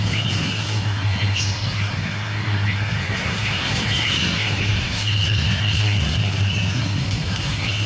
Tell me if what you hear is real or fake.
fake